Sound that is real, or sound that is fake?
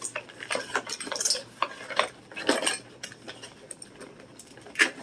real